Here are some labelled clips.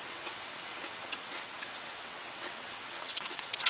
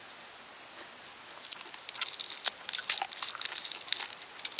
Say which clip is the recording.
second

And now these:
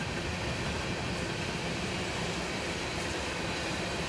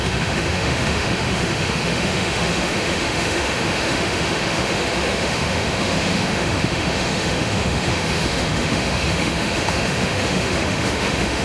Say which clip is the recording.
first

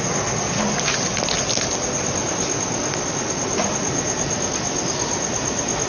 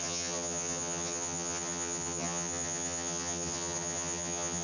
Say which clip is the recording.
first